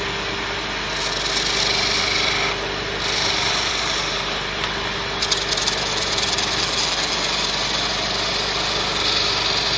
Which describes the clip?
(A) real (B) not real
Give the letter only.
A